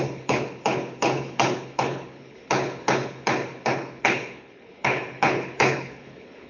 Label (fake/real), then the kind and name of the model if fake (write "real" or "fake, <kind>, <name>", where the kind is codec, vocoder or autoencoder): fake, codec, HILCodec